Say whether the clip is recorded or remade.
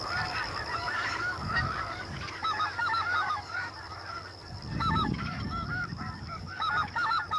remade